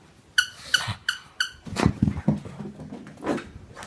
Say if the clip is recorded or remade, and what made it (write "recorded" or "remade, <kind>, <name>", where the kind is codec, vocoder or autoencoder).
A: recorded